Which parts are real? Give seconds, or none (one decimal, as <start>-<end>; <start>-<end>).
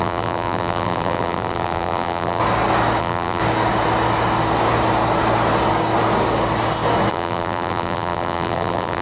2.4-3.0; 3.4-7.1